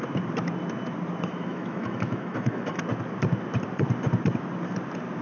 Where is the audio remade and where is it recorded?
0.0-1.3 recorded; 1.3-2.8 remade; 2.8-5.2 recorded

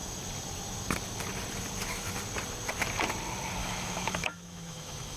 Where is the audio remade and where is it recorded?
0.0-3.6 recorded; 3.6-5.2 remade

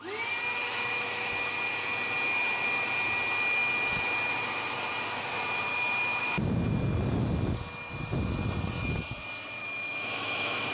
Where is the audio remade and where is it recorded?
0.0-0.6 recorded; 0.6-1.3 remade; 1.3-9.6 recorded; 9.6-10.7 remade